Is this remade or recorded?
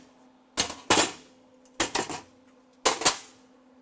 recorded